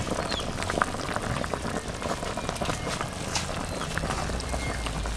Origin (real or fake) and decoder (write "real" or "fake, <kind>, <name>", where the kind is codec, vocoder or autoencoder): real